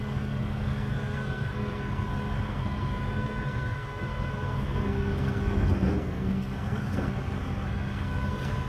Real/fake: fake